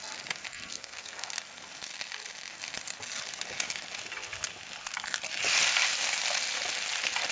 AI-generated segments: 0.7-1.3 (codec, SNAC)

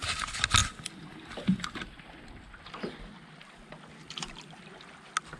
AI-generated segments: none

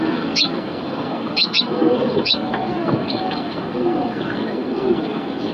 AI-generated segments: 0.0-5.5 (codec, SNAC)

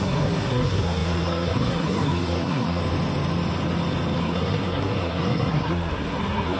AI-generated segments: 0.0-2.8 (codec, SNAC); 4.2-6.6